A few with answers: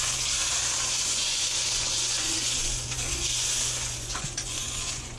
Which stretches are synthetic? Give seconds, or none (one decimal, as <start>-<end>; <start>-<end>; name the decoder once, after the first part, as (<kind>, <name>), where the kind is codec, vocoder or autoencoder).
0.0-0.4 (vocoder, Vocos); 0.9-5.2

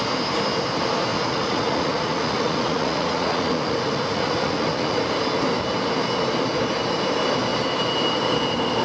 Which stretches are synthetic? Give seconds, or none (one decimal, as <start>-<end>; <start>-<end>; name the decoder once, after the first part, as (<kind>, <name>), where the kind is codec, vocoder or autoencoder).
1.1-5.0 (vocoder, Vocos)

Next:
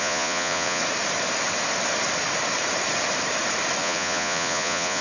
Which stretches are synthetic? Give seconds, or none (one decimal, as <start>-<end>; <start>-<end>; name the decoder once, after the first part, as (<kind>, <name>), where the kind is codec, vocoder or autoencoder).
0.0-0.8 (vocoder, Vocos); 3.8-5.0

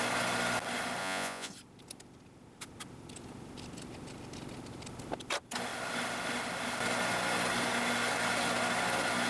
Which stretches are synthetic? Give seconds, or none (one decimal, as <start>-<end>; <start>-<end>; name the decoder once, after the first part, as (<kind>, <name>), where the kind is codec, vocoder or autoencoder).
1.0-1.5 (vocoder, Vocos)

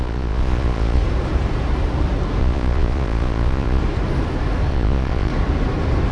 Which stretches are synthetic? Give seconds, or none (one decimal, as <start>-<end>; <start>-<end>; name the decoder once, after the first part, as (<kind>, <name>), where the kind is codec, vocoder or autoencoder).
0.0-1.0 (vocoder, Vocos); 2.4-3.8; 4.7-5.3

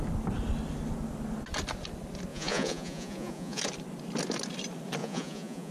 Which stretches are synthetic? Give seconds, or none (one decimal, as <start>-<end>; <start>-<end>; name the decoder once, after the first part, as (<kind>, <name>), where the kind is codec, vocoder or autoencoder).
2.3-3.6 (vocoder, Vocos); 5.0-5.7

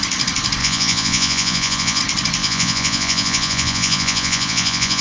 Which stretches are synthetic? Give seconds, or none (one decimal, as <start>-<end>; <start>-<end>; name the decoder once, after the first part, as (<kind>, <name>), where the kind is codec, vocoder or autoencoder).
0.6-2.0 (vocoder, Vocos); 2.4-5.0

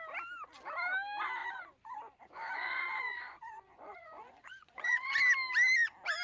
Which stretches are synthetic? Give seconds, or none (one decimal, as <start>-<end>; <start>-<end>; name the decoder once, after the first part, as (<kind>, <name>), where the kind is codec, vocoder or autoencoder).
1.4-5.1 (vocoder, Vocos)